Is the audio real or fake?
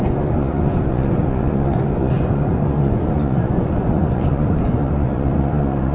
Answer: fake